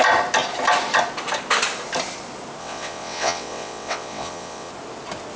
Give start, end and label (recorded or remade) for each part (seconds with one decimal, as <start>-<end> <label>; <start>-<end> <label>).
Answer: 0.0-2.6 recorded; 2.6-4.7 remade; 4.7-5.4 recorded